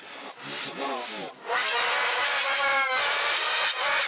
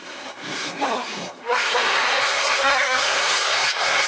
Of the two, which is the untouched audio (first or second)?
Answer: first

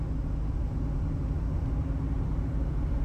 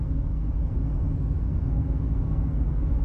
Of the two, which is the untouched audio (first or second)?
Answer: first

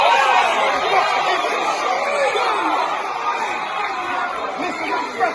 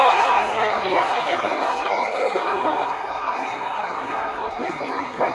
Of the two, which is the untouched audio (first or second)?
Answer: first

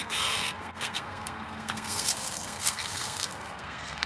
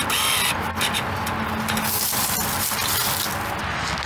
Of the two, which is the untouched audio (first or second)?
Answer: second